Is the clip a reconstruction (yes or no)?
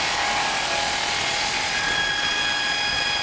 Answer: no